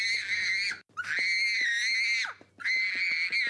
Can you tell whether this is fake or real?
real